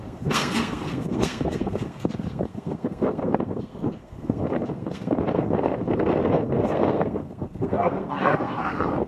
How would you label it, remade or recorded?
remade